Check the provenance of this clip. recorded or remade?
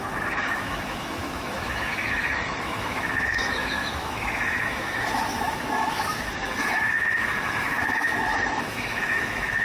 remade